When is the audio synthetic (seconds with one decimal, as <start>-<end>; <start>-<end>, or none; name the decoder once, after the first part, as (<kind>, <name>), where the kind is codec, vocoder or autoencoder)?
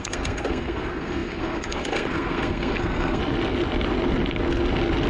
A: 0.0-3.2 (codec, SNAC)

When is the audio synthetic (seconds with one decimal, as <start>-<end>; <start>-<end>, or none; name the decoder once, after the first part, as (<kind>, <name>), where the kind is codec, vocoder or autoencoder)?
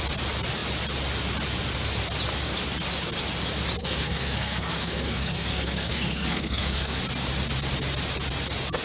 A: 3.8-7.0 (codec, SNAC)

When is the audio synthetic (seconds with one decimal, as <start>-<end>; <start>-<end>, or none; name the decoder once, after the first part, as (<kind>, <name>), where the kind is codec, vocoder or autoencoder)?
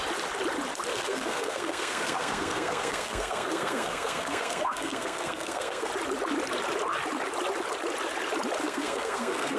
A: 0.9-5.9 (codec, SNAC); 8.6-9.6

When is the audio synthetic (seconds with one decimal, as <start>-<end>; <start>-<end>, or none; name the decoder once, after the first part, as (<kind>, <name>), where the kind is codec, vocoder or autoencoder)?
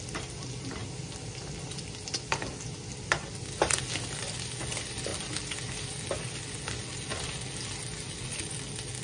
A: none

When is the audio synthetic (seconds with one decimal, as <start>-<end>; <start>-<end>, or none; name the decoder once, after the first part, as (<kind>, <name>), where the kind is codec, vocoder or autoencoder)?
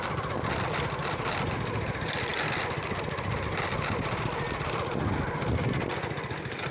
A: none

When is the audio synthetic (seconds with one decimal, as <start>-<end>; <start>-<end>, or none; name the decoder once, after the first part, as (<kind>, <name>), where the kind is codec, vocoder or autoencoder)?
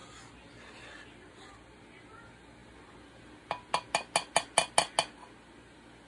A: none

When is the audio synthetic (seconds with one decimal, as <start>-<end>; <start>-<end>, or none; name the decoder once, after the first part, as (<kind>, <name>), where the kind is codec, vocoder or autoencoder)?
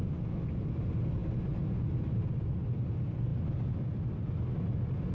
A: none